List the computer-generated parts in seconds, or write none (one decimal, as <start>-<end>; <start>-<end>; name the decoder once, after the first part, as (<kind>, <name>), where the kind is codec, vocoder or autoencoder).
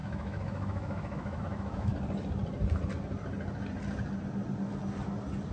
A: 0.0-1.9 (autoencoder, DAC-VAE)